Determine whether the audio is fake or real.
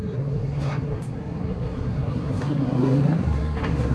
fake